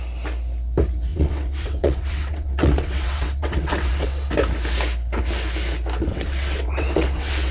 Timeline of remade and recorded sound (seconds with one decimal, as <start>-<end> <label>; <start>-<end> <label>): 0.0-1.1 recorded; 1.1-4.3 remade; 4.3-6.1 recorded; 6.1-7.5 remade